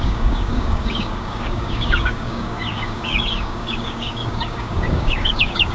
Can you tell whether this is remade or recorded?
remade